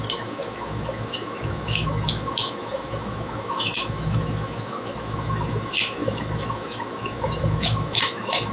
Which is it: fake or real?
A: fake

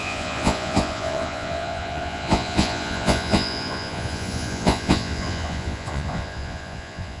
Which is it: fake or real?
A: fake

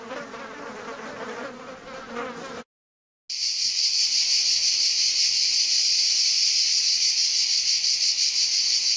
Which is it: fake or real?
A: real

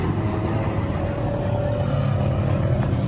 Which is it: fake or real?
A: real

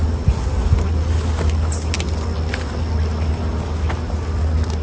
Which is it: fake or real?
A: real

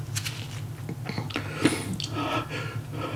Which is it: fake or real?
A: real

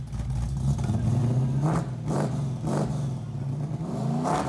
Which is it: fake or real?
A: real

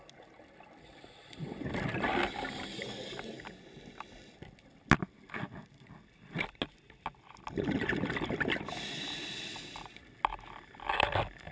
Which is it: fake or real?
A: real